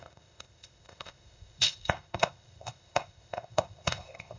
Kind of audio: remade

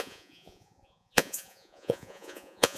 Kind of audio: remade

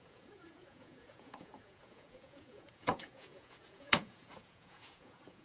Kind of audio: remade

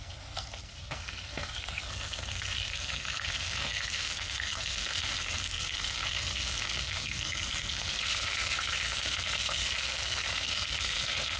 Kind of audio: remade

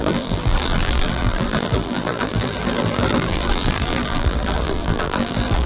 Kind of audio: remade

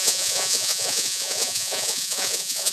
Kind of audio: remade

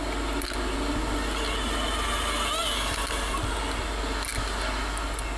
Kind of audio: recorded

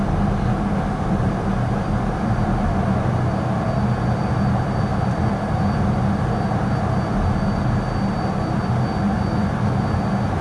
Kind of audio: recorded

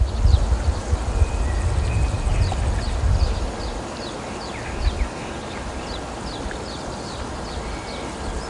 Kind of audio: recorded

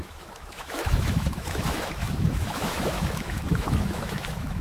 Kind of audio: remade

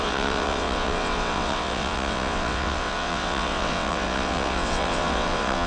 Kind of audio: remade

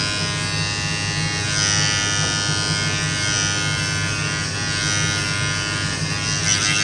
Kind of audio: recorded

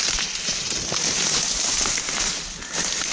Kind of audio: recorded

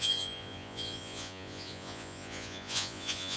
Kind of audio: remade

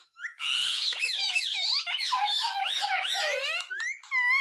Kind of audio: remade